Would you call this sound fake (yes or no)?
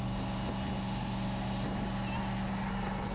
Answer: no